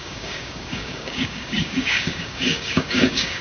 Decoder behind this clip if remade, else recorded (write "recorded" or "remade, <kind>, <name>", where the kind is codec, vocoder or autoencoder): remade, codec, DAC